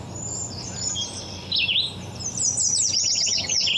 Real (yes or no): yes